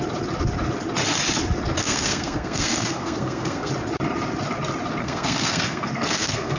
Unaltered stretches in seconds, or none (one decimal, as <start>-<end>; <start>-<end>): 0.0-1.8; 3.7-5.0